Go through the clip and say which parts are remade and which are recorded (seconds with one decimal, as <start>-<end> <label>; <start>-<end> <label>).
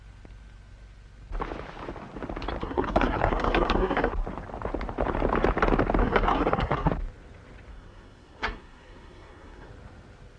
0.0-2.6 recorded; 2.6-4.1 remade; 4.1-6.0 recorded; 6.0-6.9 remade; 6.9-7.7 recorded; 7.7-9.7 remade; 9.7-10.4 recorded